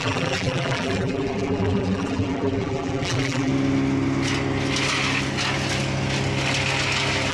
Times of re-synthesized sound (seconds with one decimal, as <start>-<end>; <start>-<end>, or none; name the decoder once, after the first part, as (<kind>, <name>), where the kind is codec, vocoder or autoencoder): 0.0-3.5 (vocoder, BigVGAN v2)